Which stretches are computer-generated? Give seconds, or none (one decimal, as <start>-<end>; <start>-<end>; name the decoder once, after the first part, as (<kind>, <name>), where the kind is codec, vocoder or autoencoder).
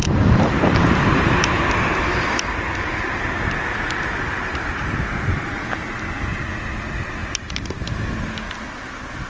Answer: 0.0-5.2 (vocoder, BigVGAN v2); 7.2-8.0